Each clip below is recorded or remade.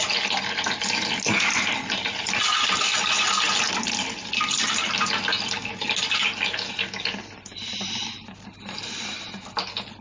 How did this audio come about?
recorded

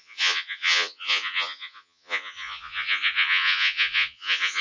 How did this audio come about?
remade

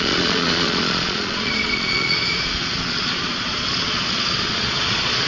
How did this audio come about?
remade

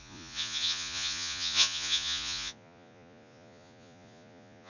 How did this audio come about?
remade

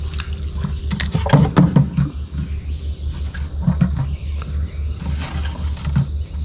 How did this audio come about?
recorded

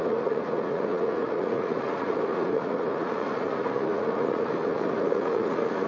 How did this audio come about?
remade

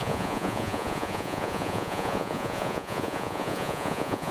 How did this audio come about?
remade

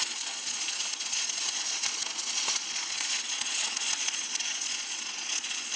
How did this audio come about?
remade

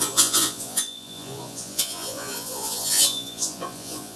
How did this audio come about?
remade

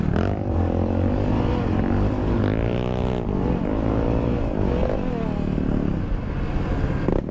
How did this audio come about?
recorded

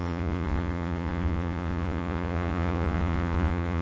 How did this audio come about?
remade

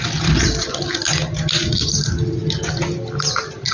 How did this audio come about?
recorded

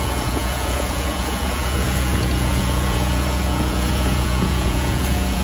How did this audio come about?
remade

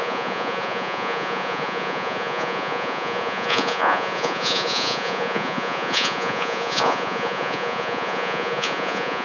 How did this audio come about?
remade